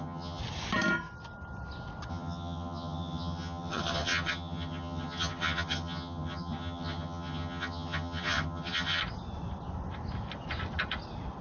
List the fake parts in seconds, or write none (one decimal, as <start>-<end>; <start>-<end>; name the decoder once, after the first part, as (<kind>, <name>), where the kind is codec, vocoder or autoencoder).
0.0-0.4 (vocoder, HiFi-GAN); 2.1-9.0